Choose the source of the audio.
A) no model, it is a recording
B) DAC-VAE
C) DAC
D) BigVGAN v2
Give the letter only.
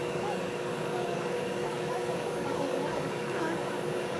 C